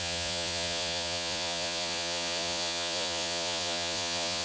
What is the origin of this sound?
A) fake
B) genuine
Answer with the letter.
A